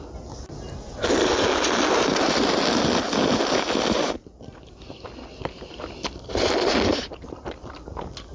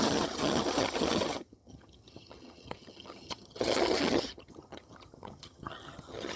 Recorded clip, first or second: first